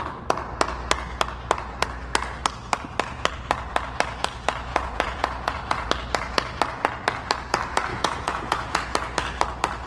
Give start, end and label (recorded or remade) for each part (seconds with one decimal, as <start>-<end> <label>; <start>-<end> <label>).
0.0-4.7 recorded; 4.7-5.9 remade; 5.9-7.9 recorded; 7.9-8.8 remade; 8.8-9.9 recorded